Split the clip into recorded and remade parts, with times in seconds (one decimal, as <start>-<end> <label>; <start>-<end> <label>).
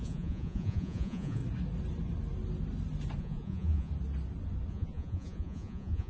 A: 0.0-1.4 remade; 1.4-3.2 recorded; 3.2-3.9 remade; 3.9-4.7 recorded; 4.7-6.1 remade